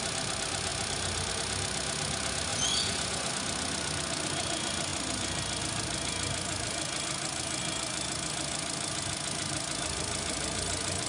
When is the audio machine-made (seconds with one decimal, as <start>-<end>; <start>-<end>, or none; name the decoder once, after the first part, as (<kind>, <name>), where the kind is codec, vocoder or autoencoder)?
2.5-3.3 (vocoder, Vocos)